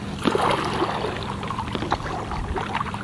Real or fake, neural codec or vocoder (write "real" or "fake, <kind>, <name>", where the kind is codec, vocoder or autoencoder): real